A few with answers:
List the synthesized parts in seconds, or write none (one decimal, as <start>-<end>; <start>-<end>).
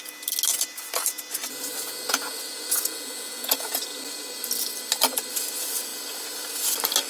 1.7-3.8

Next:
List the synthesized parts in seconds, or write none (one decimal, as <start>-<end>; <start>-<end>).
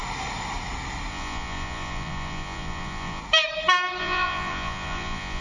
1.1-3.2; 4.0-5.4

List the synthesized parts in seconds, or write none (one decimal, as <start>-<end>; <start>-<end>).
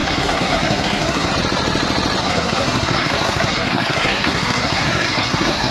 0.0-1.3; 2.2-5.7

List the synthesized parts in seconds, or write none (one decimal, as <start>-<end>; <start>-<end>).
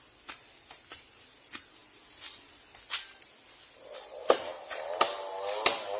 none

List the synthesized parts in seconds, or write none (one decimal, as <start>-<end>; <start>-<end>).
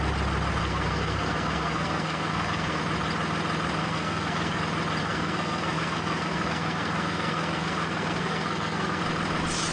0.6-2.8; 3.8-4.6; 5.0-9.0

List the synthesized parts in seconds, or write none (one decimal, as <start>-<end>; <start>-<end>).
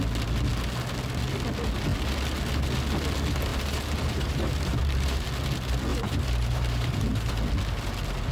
3.5-5.2; 5.9-7.4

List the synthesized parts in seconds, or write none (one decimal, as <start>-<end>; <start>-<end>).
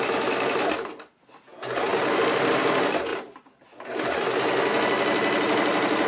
none